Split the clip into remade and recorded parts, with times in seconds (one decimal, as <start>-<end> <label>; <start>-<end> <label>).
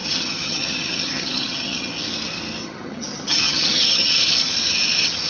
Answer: 0.0-1.9 remade; 1.9-2.6 recorded; 2.6-4.2 remade; 4.2-5.3 recorded